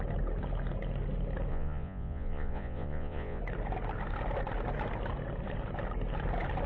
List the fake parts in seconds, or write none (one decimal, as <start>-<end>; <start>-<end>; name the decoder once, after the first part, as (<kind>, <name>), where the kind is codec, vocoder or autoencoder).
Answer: 1.5-3.4 (vocoder, Vocos)